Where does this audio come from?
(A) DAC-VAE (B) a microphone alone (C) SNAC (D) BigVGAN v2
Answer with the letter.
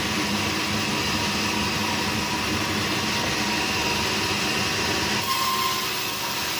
B